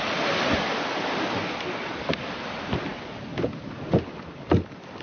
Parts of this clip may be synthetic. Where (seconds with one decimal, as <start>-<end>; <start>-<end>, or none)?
none